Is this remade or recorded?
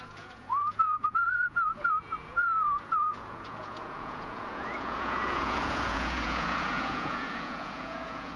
remade